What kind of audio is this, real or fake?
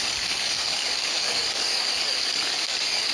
fake